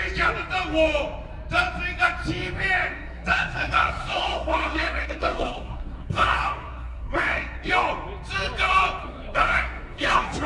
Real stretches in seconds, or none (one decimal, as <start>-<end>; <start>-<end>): 0.0-2.9; 7.7-9.0